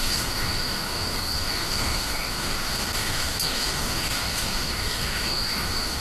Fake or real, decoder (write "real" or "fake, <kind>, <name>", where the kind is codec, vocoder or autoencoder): fake, codec, DAC